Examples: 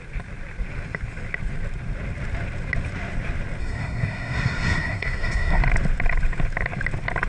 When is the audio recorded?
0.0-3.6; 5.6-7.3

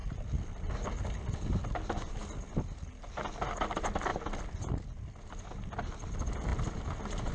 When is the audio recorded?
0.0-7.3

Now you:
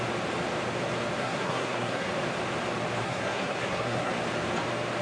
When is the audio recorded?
0.0-1.2; 2.1-3.0; 4.1-5.0

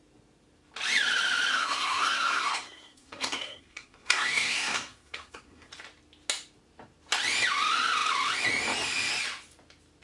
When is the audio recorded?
0.0-1.5; 5.7-10.0